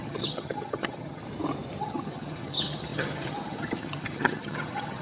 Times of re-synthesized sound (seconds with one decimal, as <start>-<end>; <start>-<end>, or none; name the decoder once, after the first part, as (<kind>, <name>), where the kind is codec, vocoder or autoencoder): 0.0-1.2 (vocoder, HiFi-GAN); 1.8-5.0